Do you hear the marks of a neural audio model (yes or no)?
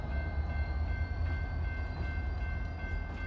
no